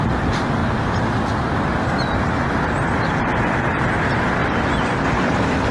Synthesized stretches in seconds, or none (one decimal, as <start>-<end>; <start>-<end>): 0.0-4.4; 5.2-5.7